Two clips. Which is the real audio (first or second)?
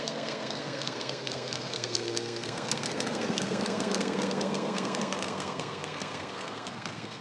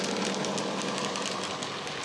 second